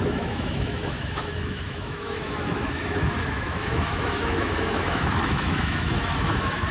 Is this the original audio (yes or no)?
no